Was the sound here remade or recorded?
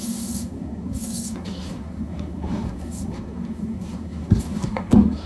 remade